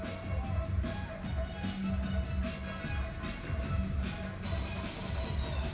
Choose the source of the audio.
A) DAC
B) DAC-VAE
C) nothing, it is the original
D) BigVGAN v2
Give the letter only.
C